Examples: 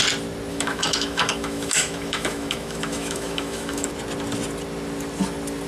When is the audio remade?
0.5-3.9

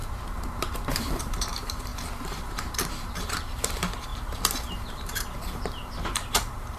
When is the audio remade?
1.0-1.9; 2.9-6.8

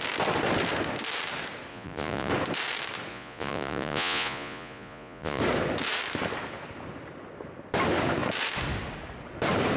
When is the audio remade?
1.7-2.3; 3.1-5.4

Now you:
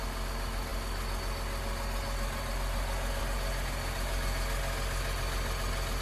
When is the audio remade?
none